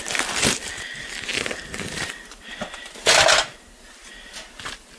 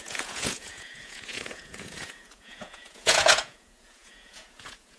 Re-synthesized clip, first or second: second